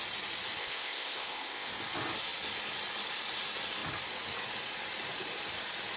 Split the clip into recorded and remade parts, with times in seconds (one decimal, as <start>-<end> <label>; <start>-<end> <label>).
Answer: 0.0-0.6 recorded; 0.6-1.7 remade; 1.7-6.0 recorded